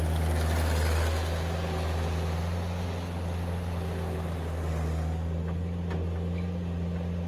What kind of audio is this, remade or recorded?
recorded